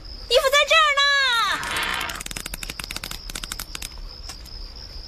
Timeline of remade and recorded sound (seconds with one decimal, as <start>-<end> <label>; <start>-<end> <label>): 0.0-5.1 recorded